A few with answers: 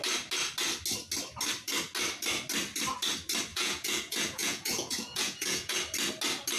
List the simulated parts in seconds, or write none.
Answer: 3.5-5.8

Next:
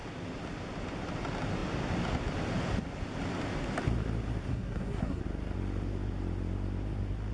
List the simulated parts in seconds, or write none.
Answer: 4.5-5.2

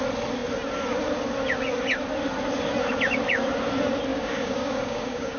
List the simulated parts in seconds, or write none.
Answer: 4.1-5.4

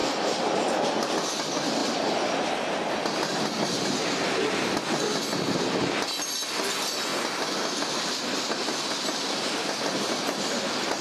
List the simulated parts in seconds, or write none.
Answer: none

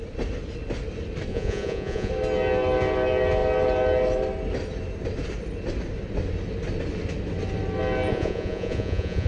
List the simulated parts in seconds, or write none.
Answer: 1.3-2.1; 8.1-9.3

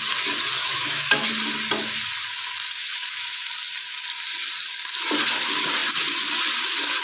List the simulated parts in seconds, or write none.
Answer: 0.6-1.3; 2.8-3.5

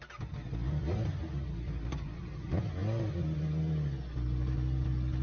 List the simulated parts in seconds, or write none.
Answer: none